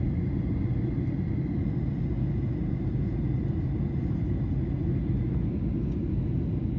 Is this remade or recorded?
recorded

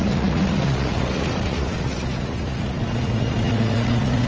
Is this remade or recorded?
remade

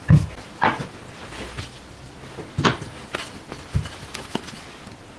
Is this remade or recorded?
recorded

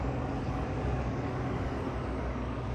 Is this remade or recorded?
remade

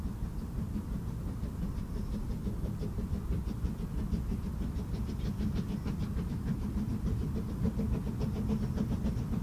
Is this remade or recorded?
recorded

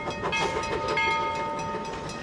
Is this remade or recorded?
recorded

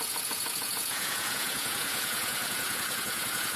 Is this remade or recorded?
remade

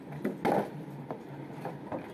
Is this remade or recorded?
recorded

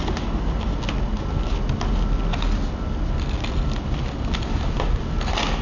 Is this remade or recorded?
recorded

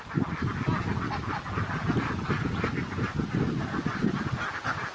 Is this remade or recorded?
recorded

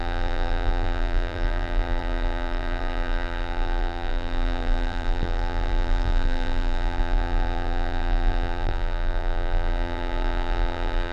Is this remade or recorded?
remade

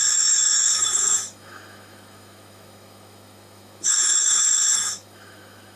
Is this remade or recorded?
remade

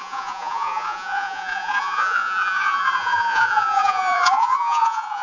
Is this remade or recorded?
remade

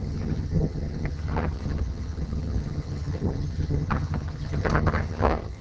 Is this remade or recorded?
remade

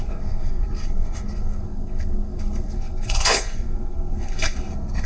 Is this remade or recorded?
remade